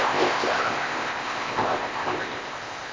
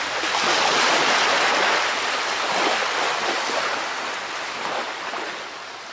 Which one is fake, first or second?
first